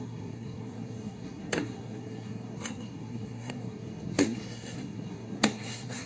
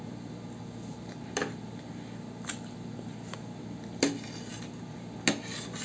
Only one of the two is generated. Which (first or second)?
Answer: first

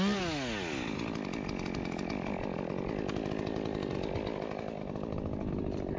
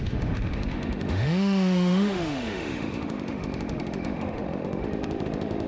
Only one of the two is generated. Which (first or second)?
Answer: second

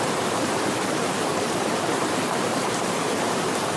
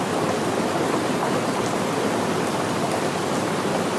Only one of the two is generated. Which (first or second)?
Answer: first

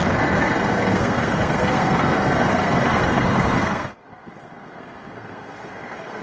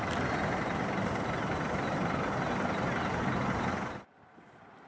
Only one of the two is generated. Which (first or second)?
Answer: first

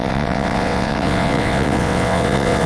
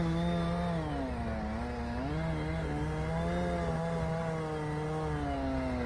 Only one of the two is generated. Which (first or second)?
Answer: first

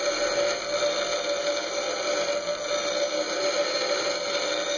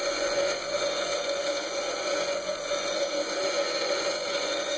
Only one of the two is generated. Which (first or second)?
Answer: second